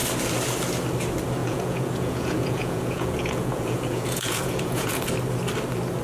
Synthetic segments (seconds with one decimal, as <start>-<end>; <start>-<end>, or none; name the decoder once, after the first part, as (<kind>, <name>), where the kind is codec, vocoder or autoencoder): 1.4-5.0 (vocoder, Vocos)